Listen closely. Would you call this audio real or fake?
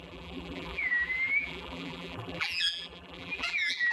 fake